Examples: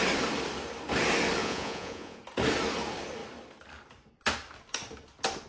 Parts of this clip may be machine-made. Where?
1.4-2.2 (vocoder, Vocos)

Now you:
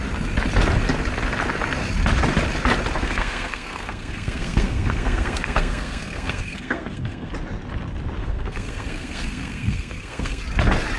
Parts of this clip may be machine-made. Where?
3.0-7.3 (codec, SNAC); 8.2-10.4

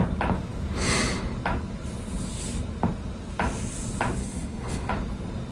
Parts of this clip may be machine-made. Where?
4.2-4.9 (codec, HILCodec)

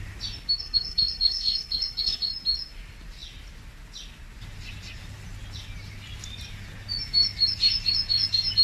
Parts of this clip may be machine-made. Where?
0.6-2.3 (codec, SNAC)

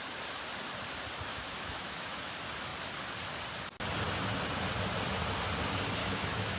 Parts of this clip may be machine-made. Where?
1.3-2.3 (autoencoder, DAC-VAE); 6.0-6.6